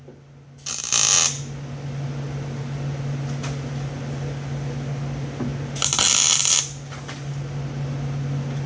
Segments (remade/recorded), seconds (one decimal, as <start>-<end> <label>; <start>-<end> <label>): 0.0-8.7 recorded